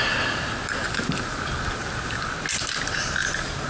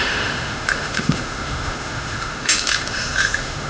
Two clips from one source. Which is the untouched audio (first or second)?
first